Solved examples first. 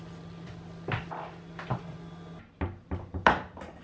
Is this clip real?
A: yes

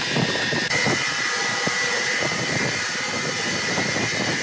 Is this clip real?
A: no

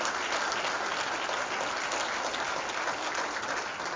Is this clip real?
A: yes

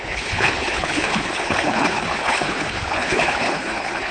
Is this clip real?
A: no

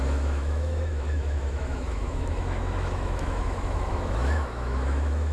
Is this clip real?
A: no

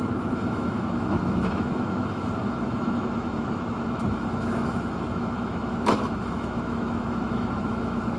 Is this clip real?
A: no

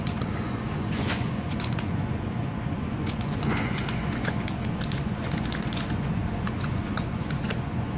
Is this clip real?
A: no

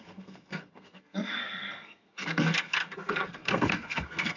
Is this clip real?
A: no